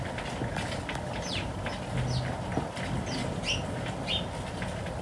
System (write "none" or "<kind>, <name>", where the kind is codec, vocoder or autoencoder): none